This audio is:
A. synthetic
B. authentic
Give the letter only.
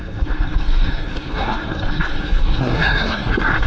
A